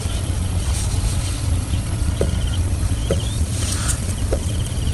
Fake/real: fake